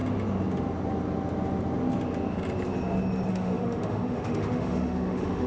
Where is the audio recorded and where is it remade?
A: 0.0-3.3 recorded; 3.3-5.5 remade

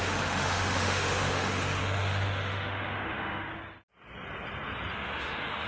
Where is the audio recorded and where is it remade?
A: 0.0-3.5 remade; 3.5-4.9 recorded; 4.9-5.7 remade

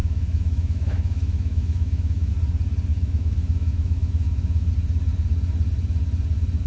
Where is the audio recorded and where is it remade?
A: 0.0-2.3 remade; 2.3-2.9 recorded; 2.9-4.7 remade; 4.7-6.7 recorded

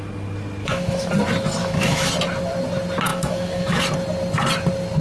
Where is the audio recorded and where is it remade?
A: 0.0-0.6 recorded; 0.6-1.1 remade; 1.1-1.6 recorded; 1.6-2.1 remade; 2.1-3.1 recorded; 3.1-3.8 remade; 3.8-5.0 recorded

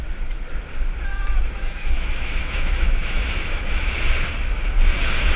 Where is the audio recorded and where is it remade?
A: 0.0-1.1 recorded; 1.1-4.3 remade; 4.3-5.4 recorded